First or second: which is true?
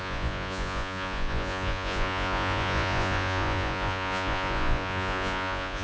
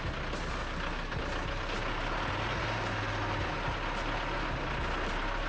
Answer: second